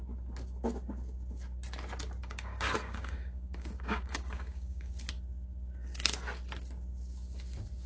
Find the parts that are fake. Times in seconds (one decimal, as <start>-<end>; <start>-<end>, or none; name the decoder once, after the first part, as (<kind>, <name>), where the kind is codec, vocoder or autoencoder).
2.2-4.9 (codec, DAC)